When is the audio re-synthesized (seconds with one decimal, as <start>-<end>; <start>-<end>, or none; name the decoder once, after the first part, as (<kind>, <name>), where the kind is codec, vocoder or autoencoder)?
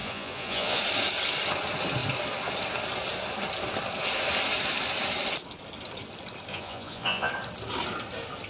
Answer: 0.0-0.8 (vocoder, Vocos); 6.5-7.3